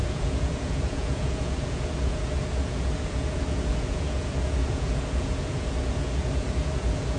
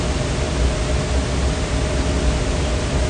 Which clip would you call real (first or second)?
second